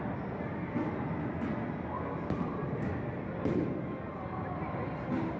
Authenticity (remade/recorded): recorded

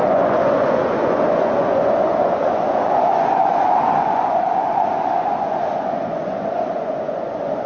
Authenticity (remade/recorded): remade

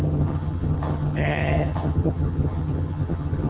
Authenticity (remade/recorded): remade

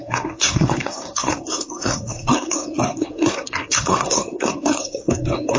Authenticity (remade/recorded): remade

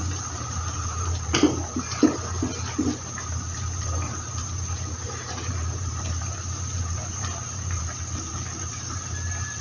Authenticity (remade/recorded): remade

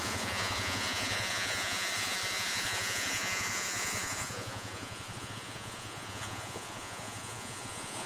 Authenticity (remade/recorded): remade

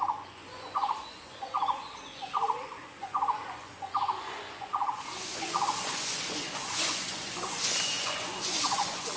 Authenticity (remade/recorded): remade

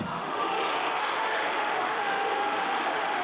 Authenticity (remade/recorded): remade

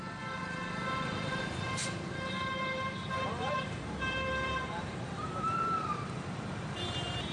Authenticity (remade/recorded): remade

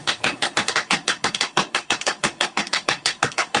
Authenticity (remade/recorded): remade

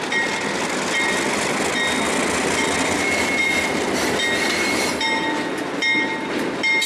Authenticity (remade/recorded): recorded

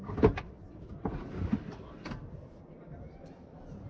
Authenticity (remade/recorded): recorded